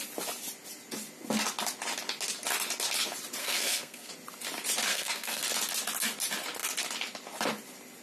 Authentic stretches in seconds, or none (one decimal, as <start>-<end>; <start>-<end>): 0.0-3.4; 4.1-4.9; 5.4-8.0